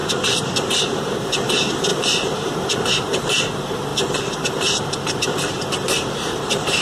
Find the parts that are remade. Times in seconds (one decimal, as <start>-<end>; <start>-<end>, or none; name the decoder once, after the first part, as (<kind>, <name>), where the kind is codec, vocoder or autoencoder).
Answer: 0.0-6.8 (vocoder, BigVGAN v2)